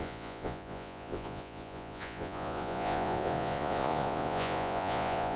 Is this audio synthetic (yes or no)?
yes